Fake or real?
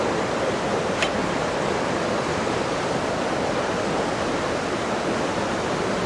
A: real